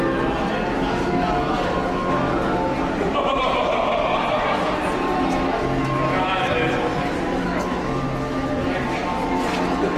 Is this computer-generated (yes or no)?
no